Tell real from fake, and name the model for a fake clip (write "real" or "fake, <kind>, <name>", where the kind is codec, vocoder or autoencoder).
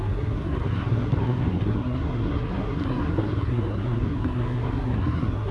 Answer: fake, codec, SNAC